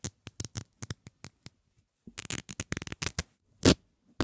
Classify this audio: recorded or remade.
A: recorded